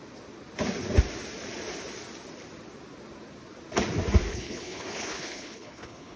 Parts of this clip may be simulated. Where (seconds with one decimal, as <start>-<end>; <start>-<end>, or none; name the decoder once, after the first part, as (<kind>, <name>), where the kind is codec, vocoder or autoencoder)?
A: 4.3-6.2 (codec, HILCodec)